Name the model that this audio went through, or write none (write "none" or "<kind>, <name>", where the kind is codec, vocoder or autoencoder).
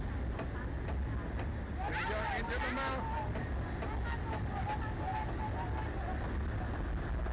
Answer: none